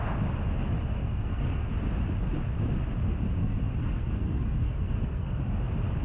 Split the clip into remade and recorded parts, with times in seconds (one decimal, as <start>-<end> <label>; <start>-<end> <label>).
0.0-0.9 recorded; 0.9-1.7 remade; 1.7-3.4 recorded; 3.4-5.4 remade; 5.4-6.0 recorded